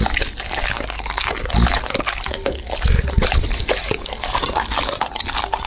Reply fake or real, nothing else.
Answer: real